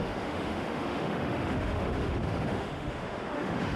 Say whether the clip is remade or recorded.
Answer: remade